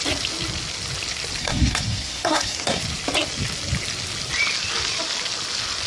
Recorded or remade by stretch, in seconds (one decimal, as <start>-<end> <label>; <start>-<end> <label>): 0.0-1.4 recorded; 1.4-2.8 remade; 2.8-5.9 recorded